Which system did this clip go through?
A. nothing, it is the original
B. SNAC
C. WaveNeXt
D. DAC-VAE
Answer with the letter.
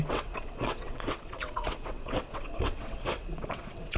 C